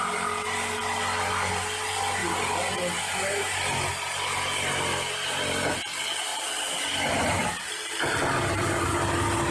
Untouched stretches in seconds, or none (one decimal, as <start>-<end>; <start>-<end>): 0.0-9.5